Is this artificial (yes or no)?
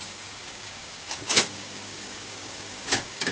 yes